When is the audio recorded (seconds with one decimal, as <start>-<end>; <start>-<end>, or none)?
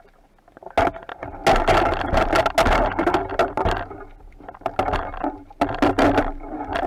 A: 0.0-6.9